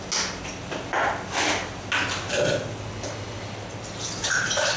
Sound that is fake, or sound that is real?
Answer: real